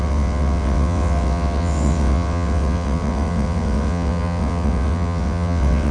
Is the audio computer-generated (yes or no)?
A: yes